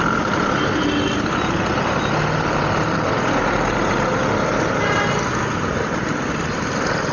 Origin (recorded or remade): recorded